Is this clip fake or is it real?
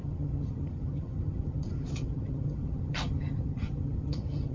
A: fake